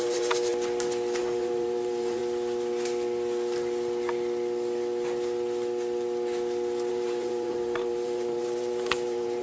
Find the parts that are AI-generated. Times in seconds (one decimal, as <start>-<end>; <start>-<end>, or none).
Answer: 0.0-0.5; 1.2-2.2; 6.9-9.4